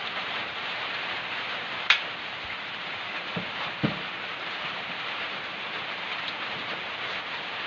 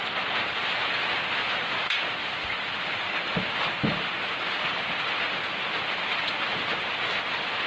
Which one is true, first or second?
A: second